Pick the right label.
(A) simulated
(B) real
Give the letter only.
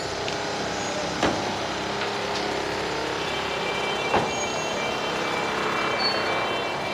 B